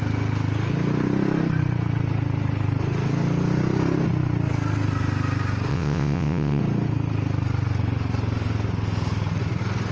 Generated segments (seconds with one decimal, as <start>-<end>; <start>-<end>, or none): 5.7-6.6